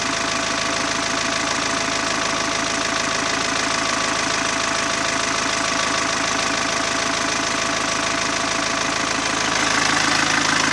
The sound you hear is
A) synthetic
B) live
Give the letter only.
B